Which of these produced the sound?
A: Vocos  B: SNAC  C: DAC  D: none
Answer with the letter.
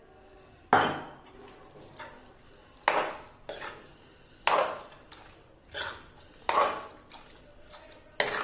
D